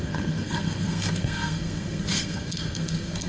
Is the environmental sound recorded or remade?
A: remade